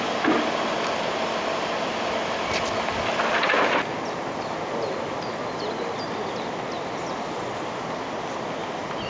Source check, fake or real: real